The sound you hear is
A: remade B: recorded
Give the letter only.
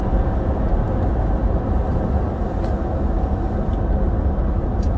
B